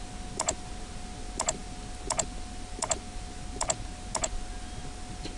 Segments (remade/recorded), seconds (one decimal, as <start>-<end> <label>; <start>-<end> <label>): 0.0-5.4 recorded